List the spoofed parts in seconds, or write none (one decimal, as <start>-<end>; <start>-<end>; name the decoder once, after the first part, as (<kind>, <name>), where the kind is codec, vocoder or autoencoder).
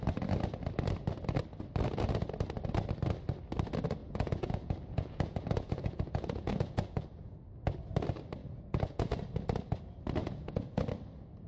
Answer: 4.0-7.4 (vocoder, Vocos); 8.4-9.2; 10.2-10.8